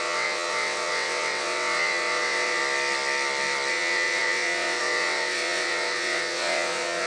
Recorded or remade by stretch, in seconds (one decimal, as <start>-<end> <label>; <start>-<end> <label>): 0.0-2.6 remade; 2.6-3.7 recorded; 3.7-7.1 remade